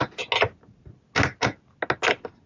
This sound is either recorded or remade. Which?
recorded